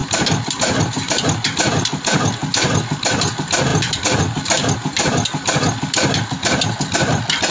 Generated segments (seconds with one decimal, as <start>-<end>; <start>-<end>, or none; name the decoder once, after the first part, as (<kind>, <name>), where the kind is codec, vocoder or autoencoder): 0.0-1.7 (vocoder, BigVGAN v2)